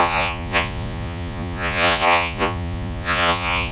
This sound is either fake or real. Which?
fake